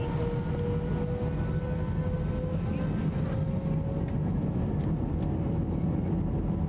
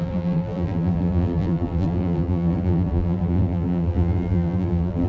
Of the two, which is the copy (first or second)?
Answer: second